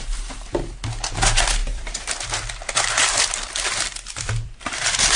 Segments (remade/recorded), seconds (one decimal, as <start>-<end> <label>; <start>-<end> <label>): 0.0-1.6 recorded; 1.6-4.7 remade; 4.7-5.2 recorded